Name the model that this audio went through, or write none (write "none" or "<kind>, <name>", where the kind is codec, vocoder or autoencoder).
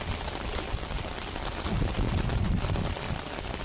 none